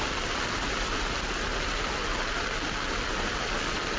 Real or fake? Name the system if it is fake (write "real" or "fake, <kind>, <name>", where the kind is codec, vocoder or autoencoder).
real